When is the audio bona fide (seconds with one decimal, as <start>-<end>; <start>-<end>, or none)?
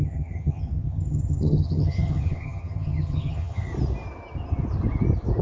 3.7-5.4